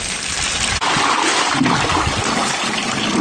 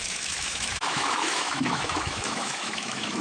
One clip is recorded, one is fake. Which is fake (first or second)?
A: second